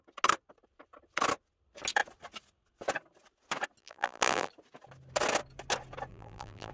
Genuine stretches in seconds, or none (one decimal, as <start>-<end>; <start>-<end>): 0.0-3.8; 4.5-6.1